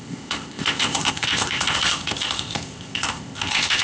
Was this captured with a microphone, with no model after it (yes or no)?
no